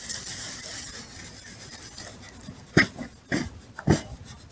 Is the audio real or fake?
real